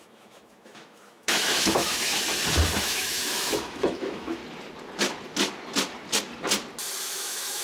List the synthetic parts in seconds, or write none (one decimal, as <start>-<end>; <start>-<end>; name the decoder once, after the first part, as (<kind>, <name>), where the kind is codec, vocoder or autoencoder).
0.0-2.1 (autoencoder, DAC-VAE); 2.8-4.4; 7.0-7.6